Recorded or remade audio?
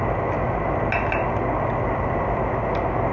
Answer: recorded